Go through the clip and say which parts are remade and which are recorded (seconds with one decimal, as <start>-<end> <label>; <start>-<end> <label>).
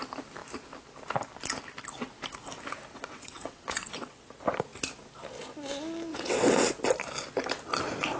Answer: 0.0-2.9 recorded; 2.9-4.3 remade; 4.3-6.1 recorded; 6.1-6.8 remade; 6.8-8.2 recorded